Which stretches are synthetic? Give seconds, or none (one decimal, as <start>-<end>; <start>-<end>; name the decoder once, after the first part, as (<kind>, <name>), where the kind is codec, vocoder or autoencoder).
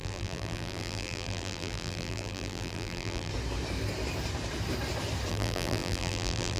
0.0-3.3 (vocoder, BigVGAN v2); 5.3-6.6